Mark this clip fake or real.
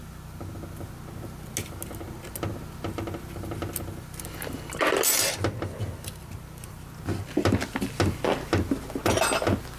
real